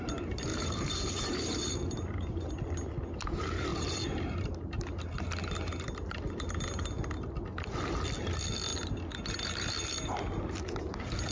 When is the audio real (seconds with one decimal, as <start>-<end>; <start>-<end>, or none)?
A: 0.0-0.5; 2.5-3.7; 4.5-11.3